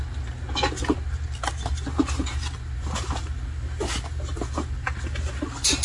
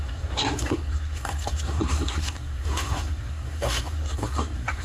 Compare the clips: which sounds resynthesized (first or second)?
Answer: second